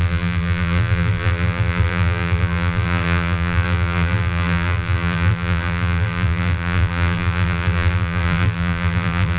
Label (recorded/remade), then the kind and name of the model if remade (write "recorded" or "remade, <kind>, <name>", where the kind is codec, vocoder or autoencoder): remade, vocoder, BigVGAN v2